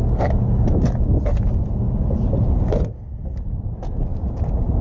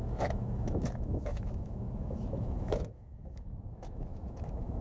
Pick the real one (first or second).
first